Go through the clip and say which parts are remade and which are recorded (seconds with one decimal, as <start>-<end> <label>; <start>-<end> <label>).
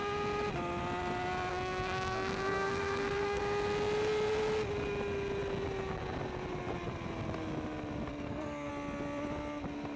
0.0-1.5 recorded; 1.5-3.4 remade; 3.4-8.1 recorded; 8.1-8.7 remade; 8.7-10.0 recorded